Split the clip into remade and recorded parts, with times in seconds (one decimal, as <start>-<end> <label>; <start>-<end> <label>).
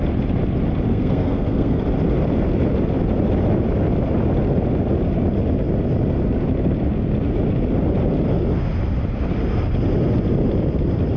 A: 0.0-0.9 recorded; 0.9-1.8 remade; 1.8-11.2 recorded